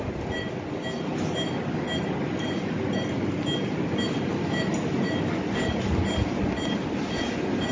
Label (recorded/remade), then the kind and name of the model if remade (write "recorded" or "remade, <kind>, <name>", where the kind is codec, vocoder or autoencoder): recorded